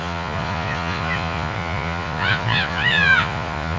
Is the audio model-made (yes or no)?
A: yes